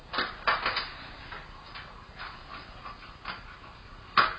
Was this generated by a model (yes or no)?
no